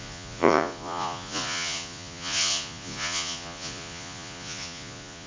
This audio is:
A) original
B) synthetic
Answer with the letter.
B